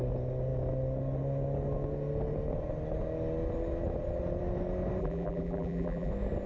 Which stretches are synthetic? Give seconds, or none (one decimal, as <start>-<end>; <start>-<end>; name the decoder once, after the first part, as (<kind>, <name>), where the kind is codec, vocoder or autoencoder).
5.0-6.1 (vocoder, BigVGAN v2)